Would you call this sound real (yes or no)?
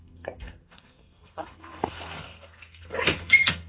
no